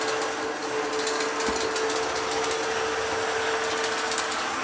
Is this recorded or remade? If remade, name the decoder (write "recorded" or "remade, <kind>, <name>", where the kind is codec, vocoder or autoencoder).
recorded